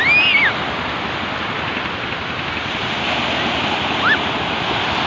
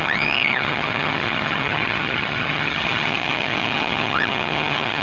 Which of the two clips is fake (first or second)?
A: second